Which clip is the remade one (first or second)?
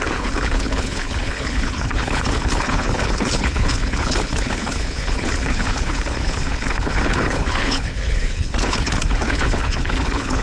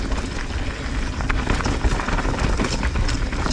first